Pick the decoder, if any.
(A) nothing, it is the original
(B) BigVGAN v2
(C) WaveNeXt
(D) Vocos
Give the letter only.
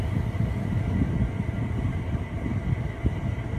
A